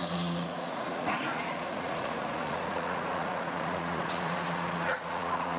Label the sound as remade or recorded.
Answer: remade